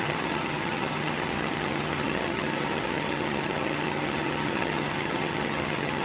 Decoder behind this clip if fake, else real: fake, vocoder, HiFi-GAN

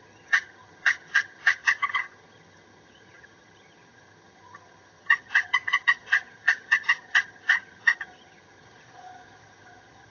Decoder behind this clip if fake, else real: fake, vocoder, HiFi-GAN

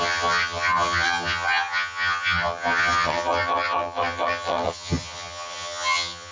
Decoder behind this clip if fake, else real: fake, vocoder, HiFi-GAN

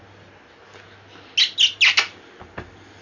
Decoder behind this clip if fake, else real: real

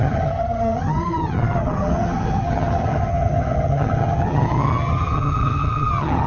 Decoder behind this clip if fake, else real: fake, vocoder, HiFi-GAN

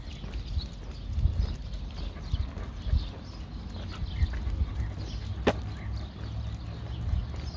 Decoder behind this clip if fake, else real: real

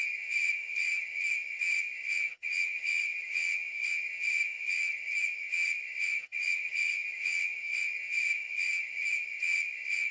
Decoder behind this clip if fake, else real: fake, vocoder, HiFi-GAN